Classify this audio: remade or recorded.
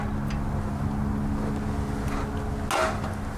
recorded